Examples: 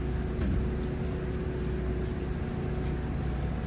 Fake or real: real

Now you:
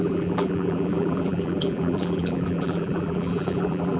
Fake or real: fake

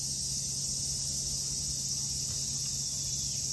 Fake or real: real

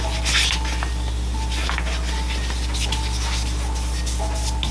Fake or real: real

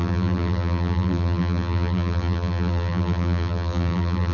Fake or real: fake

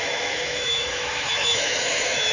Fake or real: fake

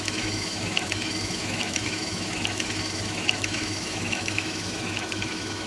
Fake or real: fake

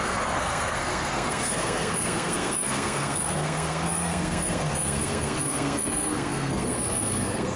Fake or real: fake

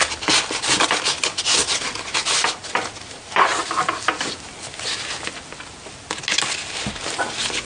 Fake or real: real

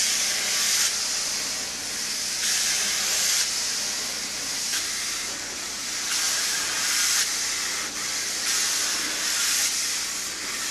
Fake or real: fake